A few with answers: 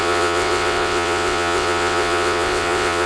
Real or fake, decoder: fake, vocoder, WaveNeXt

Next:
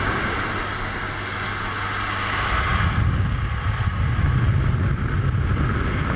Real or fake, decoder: real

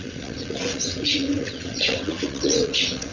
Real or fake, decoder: fake, vocoder, WaveNeXt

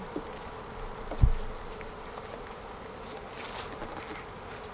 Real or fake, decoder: real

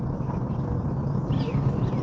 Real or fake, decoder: real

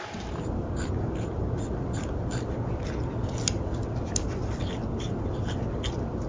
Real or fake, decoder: real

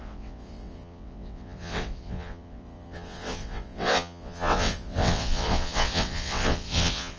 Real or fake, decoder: fake, vocoder, WaveNeXt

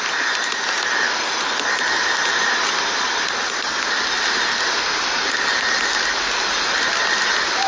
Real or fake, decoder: real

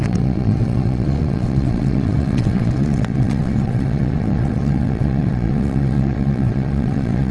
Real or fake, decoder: fake, vocoder, WaveNeXt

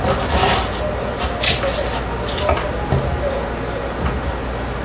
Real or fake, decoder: real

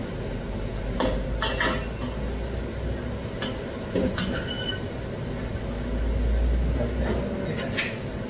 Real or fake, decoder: real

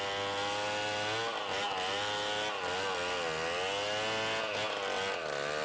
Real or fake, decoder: real